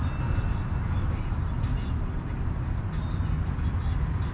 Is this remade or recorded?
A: recorded